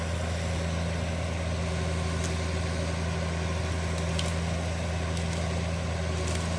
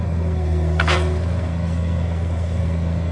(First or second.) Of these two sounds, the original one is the first